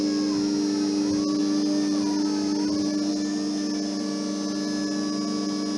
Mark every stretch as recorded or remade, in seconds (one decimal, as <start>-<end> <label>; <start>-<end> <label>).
0.0-5.8 recorded